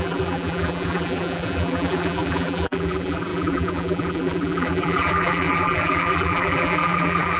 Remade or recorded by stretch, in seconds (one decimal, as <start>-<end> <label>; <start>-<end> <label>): 0.0-7.4 remade